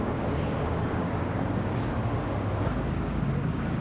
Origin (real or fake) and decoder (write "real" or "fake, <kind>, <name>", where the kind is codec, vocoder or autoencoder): fake, codec, DAC